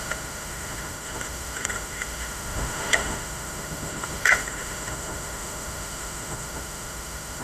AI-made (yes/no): yes